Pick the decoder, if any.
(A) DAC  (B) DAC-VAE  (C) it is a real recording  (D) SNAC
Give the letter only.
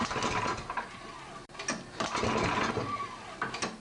C